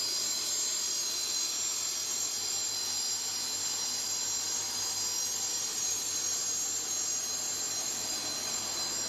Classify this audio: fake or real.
real